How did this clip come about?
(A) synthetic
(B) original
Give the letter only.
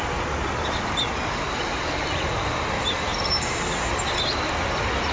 B